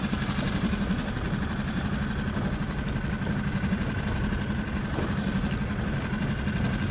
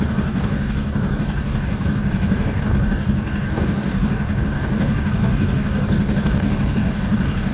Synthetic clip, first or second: second